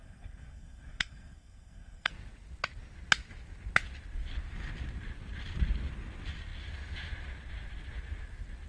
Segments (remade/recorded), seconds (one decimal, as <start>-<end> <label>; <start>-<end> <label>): 0.0-2.1 remade; 2.1-8.7 recorded